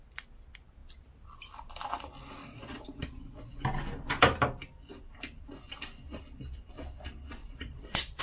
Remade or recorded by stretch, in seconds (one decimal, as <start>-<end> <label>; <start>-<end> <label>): 0.0-2.4 recorded; 2.4-3.6 remade; 3.6-7.4 recorded; 7.4-8.2 remade